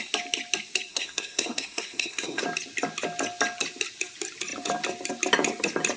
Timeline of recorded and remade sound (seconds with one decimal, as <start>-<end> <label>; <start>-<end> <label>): 0.0-0.9 recorded; 0.9-2.4 remade; 2.4-6.0 recorded